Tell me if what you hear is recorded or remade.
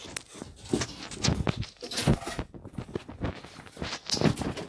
recorded